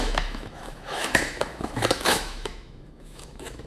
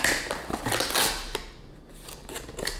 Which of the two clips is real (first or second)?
second